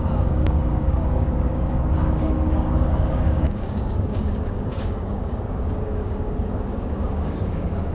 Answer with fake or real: fake